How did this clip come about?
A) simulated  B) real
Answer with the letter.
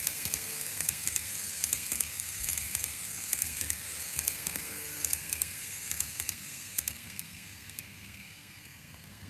A